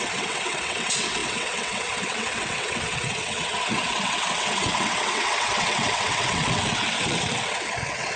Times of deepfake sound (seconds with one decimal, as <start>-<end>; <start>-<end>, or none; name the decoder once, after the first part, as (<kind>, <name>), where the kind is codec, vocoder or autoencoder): 0.0-8.2 (vocoder, WaveNeXt)